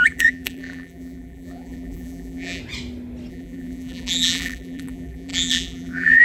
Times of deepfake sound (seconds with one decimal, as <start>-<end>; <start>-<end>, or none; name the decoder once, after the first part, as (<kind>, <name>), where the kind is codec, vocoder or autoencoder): 0.0-2.6 (vocoder, BigVGAN v2); 3.3-6.2